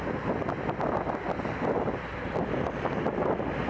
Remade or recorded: recorded